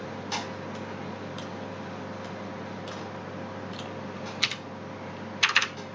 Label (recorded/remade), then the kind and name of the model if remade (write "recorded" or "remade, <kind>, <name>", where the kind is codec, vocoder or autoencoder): recorded